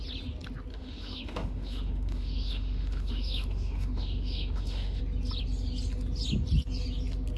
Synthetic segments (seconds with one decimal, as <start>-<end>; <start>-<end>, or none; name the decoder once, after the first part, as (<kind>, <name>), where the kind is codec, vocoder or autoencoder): 0.7-5.0 (autoencoder, DAC-VAE)